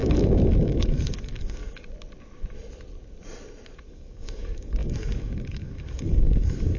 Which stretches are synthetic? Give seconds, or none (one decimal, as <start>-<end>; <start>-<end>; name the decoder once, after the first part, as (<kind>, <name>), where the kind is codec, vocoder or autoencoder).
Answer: 0.0-1.6 (codec, DAC); 3.9-6.8